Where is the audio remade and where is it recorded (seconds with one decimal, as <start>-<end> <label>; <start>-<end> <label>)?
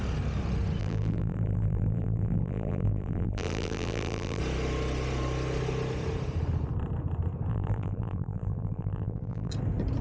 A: 0.0-0.8 recorded; 0.8-4.4 remade; 4.4-7.5 recorded; 7.5-9.5 remade; 9.5-10.0 recorded